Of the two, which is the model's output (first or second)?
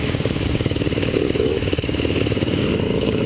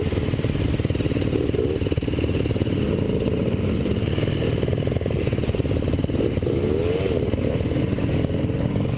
first